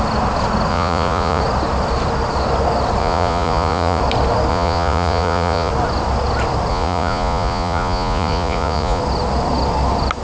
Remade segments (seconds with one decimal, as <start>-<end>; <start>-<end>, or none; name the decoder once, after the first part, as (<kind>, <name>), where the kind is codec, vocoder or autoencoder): 0.7-1.4 (vocoder, Vocos); 3.0-4.0; 4.5-5.7; 6.7-9.0